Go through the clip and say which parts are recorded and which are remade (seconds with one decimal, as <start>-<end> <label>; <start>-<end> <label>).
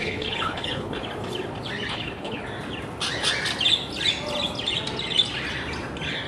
0.0-1.0 remade; 1.0-1.9 recorded; 1.9-2.4 remade; 2.4-6.3 recorded